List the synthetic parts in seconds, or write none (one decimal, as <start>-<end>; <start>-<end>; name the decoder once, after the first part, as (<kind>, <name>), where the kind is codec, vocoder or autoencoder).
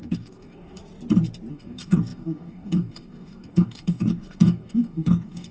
0.0-0.8 (codec, DAC); 1.5-5.5